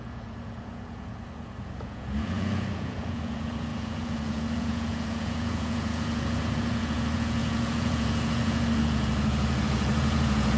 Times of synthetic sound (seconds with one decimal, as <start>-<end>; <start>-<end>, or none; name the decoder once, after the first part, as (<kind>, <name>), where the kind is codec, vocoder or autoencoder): 0.0-10.6 (vocoder, Vocos)